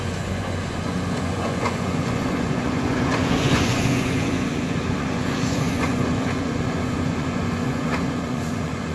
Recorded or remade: remade